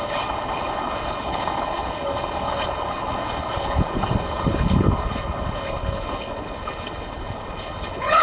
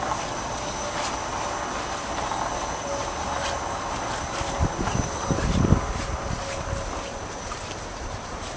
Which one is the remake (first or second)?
first